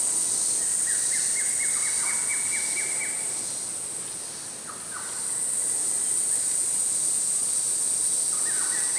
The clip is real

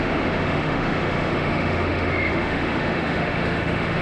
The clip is fake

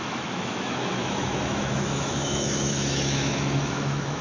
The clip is fake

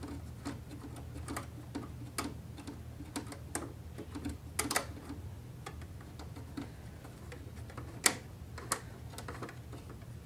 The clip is real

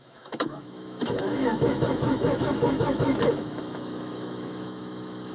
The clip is fake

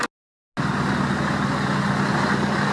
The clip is real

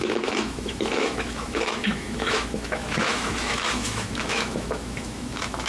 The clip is fake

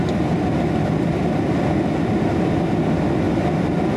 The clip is real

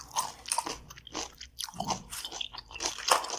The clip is real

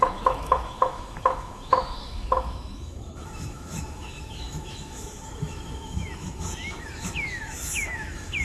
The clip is fake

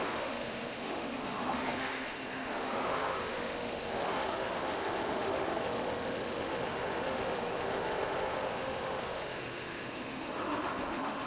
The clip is fake